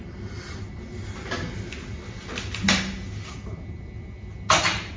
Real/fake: real